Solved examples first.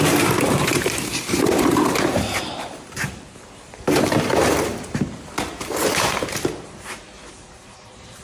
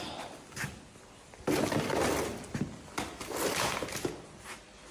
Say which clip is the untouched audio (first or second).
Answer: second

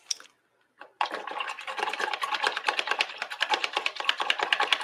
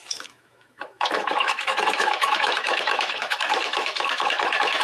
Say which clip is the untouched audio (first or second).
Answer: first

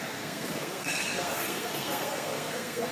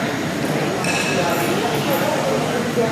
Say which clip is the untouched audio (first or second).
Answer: second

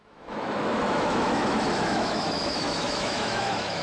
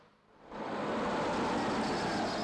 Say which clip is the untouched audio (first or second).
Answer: second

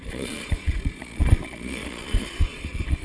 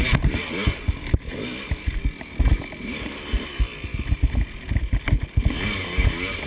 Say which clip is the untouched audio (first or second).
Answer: second